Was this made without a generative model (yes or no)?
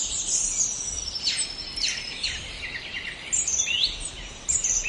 yes